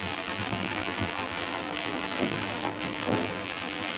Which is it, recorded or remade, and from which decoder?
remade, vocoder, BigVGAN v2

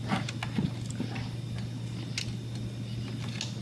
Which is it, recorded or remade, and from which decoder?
recorded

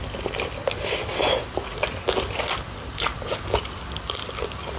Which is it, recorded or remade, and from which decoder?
recorded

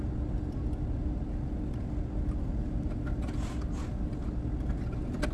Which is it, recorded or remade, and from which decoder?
recorded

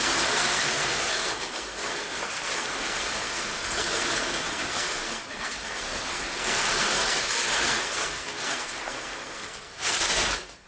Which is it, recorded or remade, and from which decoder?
remade, codec, SNAC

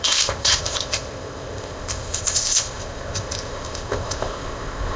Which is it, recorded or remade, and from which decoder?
remade, codec, ZipCodec